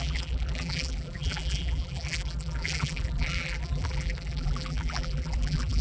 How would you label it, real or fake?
fake